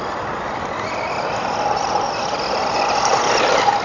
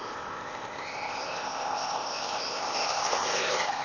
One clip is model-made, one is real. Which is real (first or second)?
first